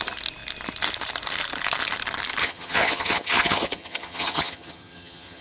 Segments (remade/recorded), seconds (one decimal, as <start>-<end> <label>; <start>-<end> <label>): 0.0-2.4 recorded; 2.4-5.4 remade